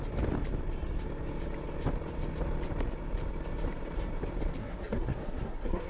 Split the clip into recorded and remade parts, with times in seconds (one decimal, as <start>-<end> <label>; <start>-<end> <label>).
0.0-4.6 recorded; 4.6-5.9 remade

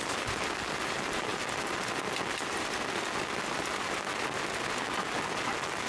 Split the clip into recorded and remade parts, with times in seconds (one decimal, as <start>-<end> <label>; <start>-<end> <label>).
0.0-5.9 recorded

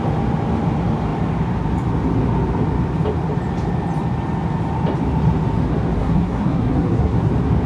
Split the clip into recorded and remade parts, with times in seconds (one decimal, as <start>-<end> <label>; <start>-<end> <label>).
0.0-6.0 recorded; 6.0-7.3 remade; 7.3-7.7 recorded

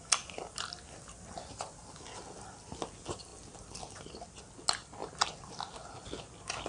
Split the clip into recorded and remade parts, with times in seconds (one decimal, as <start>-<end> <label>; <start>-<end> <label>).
0.0-6.7 recorded

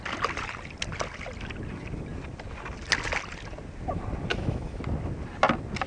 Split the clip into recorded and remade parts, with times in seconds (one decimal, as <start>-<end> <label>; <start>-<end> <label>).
0.0-4.3 recorded; 4.3-4.8 remade; 4.8-5.9 recorded

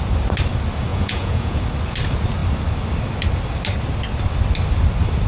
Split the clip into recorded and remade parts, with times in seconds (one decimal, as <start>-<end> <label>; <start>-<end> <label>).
0.0-0.9 recorded; 0.9-1.6 remade; 1.6-5.3 recorded

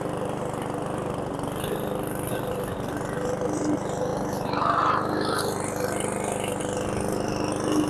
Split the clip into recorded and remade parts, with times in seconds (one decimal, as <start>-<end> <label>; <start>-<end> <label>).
0.0-7.9 recorded